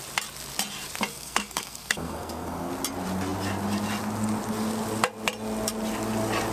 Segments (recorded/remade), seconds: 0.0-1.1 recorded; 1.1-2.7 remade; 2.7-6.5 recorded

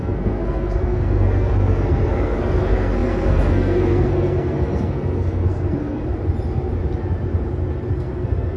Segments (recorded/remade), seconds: 0.0-6.0 remade; 6.0-7.9 recorded; 7.9-8.6 remade

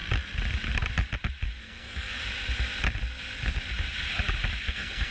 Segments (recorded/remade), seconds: 0.0-1.6 recorded; 1.6-2.2 remade; 2.2-4.6 recorded; 4.6-5.1 remade

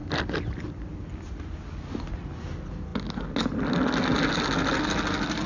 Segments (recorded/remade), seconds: 0.0-5.5 recorded

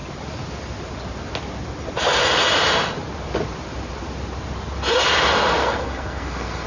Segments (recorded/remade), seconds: 0.0-5.6 recorded; 5.6-6.7 remade